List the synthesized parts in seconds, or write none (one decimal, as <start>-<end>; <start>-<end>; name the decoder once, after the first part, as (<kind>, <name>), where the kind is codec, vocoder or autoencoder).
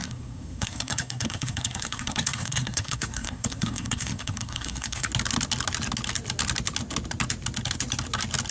0.0-5.1 (codec, SNAC)